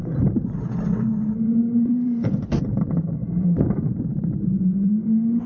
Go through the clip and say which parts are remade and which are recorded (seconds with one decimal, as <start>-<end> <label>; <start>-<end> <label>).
0.0-5.5 remade